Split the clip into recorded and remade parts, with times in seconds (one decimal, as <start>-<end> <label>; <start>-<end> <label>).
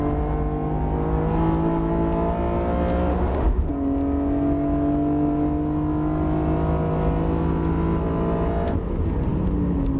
0.0-3.1 recorded; 3.1-3.7 remade; 3.7-10.0 recorded